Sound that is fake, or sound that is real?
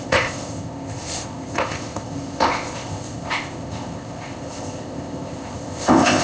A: fake